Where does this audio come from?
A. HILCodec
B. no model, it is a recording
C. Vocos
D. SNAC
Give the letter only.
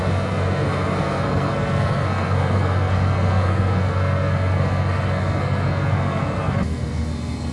D